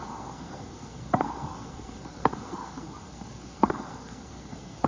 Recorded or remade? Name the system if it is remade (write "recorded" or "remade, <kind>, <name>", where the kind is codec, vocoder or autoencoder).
remade, codec, SNAC